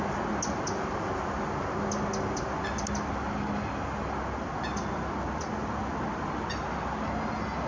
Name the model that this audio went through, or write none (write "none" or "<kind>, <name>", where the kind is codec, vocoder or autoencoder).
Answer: none